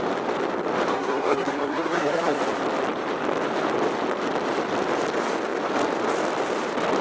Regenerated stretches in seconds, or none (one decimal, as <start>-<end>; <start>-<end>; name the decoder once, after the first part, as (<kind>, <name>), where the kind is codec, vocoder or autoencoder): 0.9-2.4 (codec, SNAC)